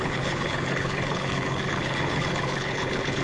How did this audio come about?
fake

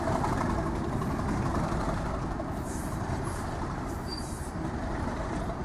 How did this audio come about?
fake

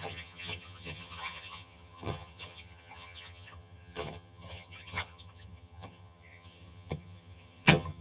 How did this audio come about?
fake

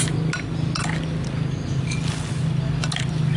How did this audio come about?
real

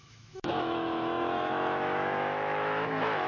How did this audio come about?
fake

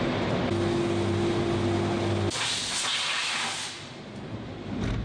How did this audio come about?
real